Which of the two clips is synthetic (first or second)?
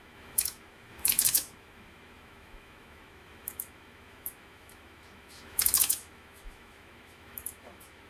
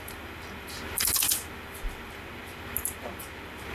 first